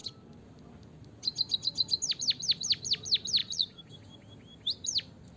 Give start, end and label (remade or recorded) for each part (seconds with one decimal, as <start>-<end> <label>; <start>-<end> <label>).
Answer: 0.0-3.4 recorded; 3.4-3.9 remade; 3.9-5.4 recorded